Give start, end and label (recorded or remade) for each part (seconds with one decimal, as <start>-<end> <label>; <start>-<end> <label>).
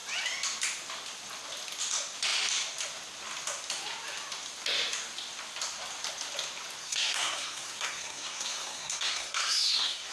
0.0-6.8 recorded; 6.8-10.1 remade